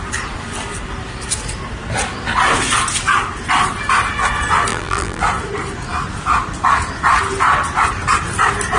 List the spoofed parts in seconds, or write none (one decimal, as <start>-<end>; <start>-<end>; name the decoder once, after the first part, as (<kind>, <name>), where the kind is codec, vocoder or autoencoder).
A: 4.7-5.2 (vocoder, BigVGAN v2)

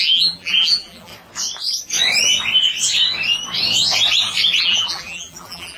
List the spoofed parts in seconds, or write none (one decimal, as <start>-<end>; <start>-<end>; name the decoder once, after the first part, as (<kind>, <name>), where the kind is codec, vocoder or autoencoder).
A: 0.0-1.1 (vocoder, BigVGAN v2); 4.6-5.8

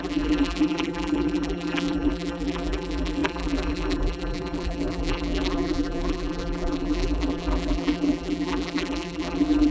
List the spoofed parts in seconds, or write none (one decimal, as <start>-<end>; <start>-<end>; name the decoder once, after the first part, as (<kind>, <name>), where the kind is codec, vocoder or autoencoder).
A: 0.0-9.7 (vocoder, BigVGAN v2)